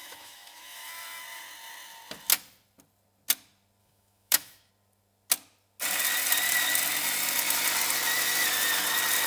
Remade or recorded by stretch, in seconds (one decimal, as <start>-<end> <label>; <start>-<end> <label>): 0.0-0.9 remade; 0.9-3.8 recorded; 3.8-4.7 remade; 4.7-9.3 recorded